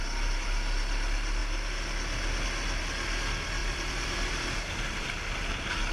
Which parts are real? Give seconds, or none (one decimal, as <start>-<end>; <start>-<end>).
0.0-3.6; 5.2-5.9